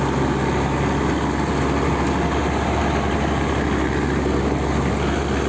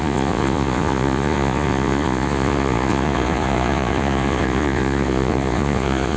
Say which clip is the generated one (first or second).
second